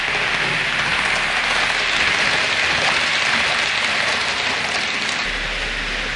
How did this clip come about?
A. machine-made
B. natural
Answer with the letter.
B